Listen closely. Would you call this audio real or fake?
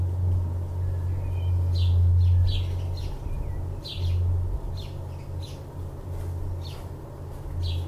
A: real